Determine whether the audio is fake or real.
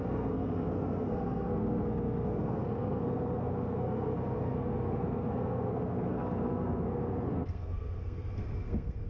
fake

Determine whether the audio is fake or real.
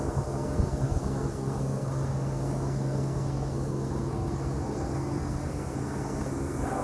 fake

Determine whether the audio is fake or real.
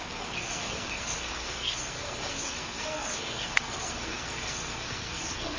fake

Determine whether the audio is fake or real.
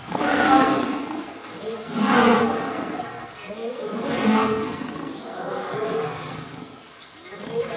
fake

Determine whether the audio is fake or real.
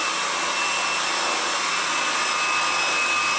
real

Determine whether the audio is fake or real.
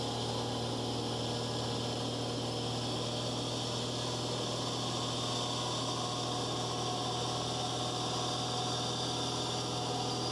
real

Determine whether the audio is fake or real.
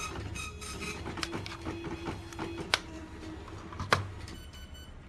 real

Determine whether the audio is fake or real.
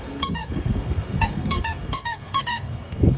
fake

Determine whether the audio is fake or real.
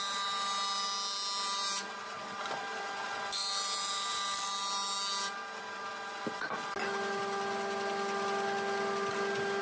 real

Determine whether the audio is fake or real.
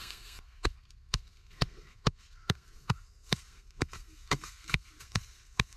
fake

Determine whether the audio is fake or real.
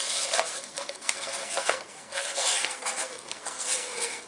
fake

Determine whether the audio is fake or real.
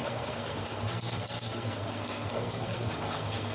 fake